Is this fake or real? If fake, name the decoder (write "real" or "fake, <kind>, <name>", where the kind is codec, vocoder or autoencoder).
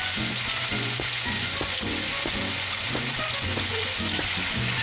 fake, vocoder, Vocos